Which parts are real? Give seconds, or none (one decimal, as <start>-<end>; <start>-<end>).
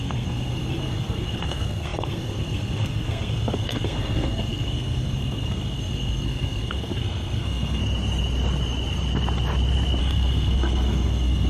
7.8-10.0